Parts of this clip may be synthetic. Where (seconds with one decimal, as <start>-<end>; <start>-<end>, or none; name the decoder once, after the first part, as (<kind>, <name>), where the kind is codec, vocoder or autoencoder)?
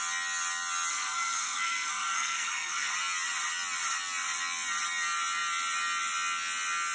0.9-2.9 (codec, SNAC)